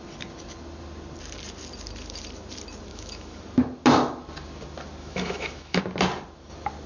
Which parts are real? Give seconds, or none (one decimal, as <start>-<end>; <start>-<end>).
0.0-2.9; 3.4-5.0; 5.8-6.9